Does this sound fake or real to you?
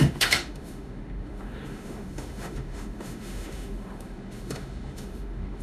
fake